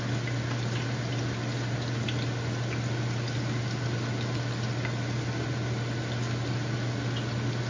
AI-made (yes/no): no